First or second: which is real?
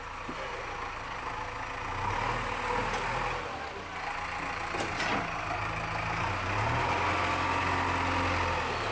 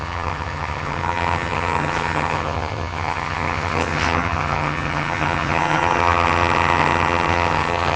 first